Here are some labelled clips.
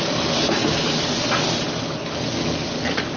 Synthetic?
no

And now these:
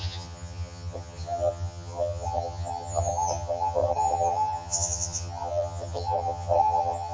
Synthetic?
yes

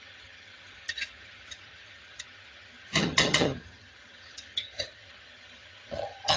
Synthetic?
yes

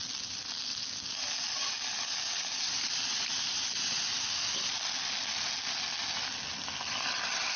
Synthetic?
no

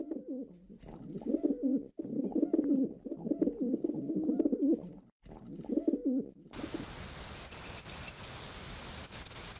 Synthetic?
no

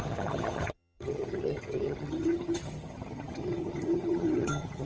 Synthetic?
yes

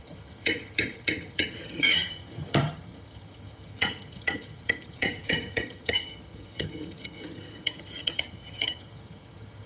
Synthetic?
yes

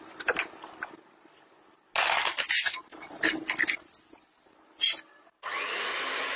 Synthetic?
no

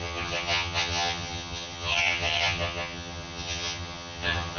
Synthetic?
yes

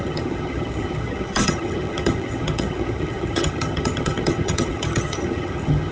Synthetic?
yes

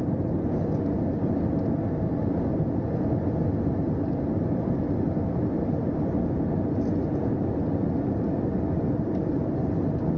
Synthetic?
no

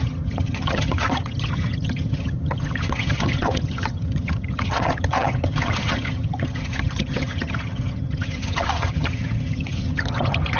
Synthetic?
yes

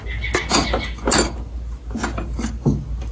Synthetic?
no